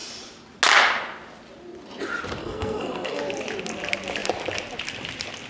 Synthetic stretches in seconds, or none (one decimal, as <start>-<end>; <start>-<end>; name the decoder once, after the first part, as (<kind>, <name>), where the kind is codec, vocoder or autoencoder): 2.4-3.2 (codec, SNAC)

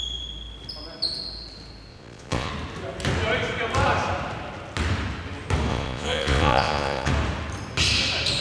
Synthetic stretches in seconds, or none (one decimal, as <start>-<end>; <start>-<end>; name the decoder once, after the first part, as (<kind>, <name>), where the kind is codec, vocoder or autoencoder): 1.9-2.5 (vocoder, Vocos); 5.7-7.1

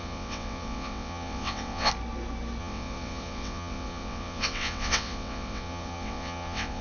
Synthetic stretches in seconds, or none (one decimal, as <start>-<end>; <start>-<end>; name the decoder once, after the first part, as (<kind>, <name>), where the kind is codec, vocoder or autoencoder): 0.0-1.9 (vocoder, WaveNeXt); 2.6-6.8

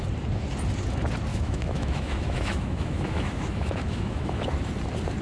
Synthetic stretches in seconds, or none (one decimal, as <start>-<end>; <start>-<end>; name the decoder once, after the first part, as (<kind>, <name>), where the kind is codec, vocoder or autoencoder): 1.3-4.4 (autoencoder, DAC-VAE)

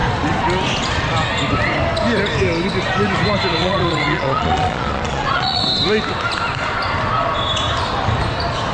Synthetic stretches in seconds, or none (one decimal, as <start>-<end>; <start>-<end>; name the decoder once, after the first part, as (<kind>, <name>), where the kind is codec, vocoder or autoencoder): 3.6-5.6 (vocoder, Vocos)

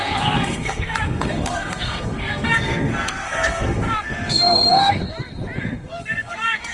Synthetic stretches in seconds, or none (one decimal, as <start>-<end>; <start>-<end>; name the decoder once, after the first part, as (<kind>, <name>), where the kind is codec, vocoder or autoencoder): 0.0-5.0 (codec, SNAC); 5.6-6.7

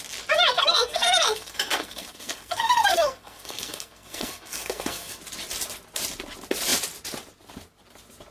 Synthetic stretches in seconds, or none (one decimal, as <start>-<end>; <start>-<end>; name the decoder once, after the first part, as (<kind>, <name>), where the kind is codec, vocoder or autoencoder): 0.5-5.2 (codec, SNAC)